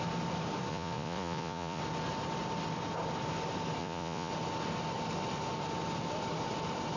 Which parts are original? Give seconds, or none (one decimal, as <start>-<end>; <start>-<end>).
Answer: 0.0-0.7; 1.8-3.8; 4.3-7.0